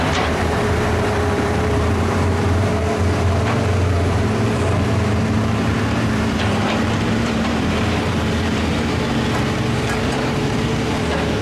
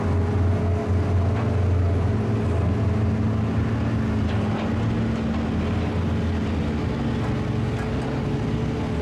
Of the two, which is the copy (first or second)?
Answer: first